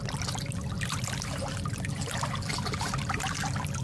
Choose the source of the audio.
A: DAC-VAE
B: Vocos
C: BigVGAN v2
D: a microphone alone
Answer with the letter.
D